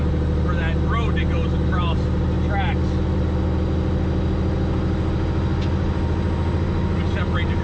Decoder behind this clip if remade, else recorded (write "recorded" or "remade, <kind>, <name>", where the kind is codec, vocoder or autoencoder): recorded